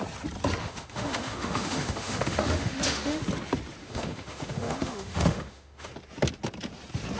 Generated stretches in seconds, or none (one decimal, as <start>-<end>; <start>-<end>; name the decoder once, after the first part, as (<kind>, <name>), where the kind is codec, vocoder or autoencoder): 0.6-3.2 (autoencoder, DAC-VAE); 3.8-5.9